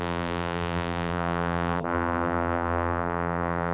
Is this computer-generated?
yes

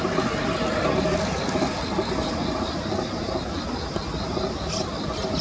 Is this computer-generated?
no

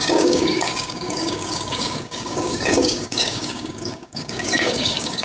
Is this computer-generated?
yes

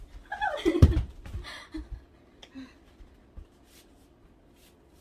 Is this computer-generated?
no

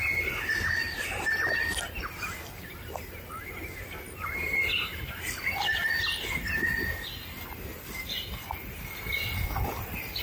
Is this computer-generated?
no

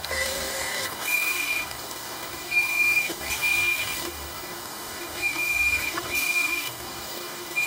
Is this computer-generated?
yes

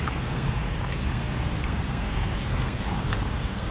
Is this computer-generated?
yes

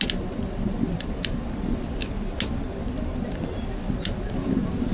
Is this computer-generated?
no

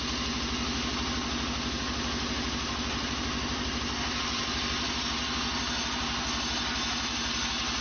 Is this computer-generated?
no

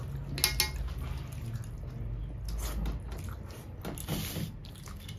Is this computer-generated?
no